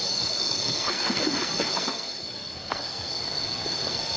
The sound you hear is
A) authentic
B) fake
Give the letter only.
B